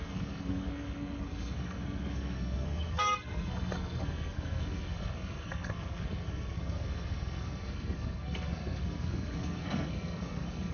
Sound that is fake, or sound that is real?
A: fake